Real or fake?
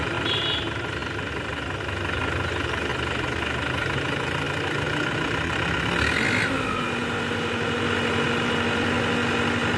real